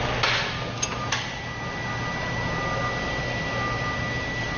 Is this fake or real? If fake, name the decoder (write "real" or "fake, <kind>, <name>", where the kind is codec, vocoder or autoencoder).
real